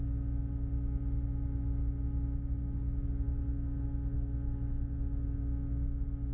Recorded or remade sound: recorded